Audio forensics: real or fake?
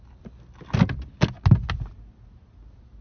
real